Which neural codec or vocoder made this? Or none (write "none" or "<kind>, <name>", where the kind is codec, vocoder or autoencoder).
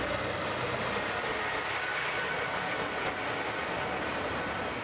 none